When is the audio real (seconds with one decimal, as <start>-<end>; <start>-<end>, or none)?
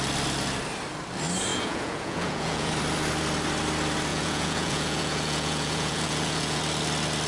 0.0-1.5; 2.7-4.1; 6.6-7.3